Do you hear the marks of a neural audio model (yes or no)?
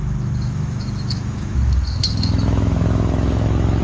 yes